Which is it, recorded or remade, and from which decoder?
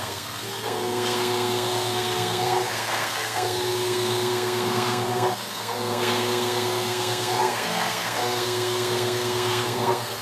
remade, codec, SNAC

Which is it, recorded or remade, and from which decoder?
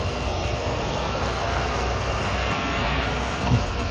remade, codec, SNAC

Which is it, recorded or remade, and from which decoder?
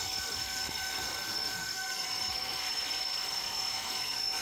remade, codec, SNAC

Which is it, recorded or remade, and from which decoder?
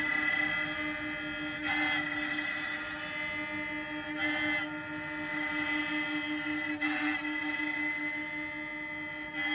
recorded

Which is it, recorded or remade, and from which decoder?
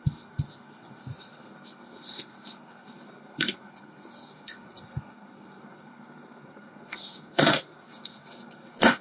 remade, codec, SNAC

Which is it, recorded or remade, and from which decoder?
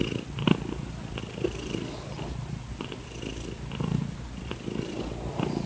recorded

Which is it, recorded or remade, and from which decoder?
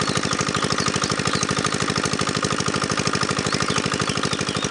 recorded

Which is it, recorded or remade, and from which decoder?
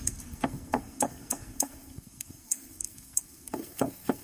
remade, codec, SNAC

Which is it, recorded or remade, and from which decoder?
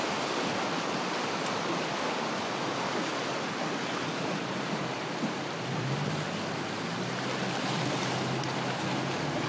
recorded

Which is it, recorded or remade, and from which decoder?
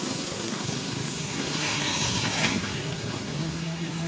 remade, codec, SNAC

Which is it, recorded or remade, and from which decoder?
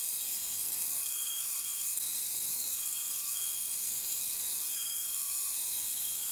remade, codec, SNAC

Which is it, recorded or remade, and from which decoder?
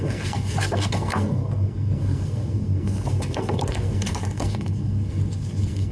remade, codec, SNAC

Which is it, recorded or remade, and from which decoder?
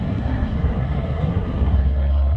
remade, codec, SNAC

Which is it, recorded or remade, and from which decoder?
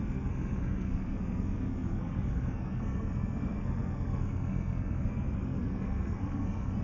remade, codec, SNAC